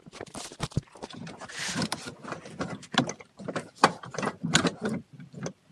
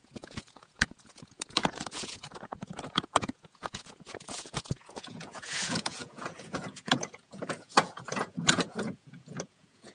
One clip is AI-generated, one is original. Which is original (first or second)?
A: first